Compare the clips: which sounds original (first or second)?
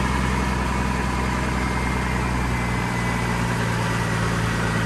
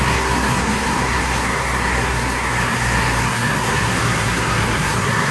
first